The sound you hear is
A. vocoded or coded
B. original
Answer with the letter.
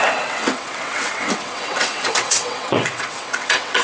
A